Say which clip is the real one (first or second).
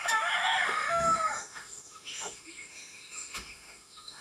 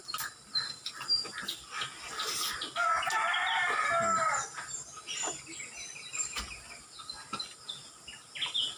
second